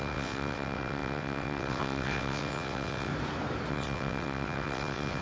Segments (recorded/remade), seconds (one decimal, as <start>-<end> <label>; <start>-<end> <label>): 0.0-3.1 remade; 3.1-3.7 recorded; 3.7-5.2 remade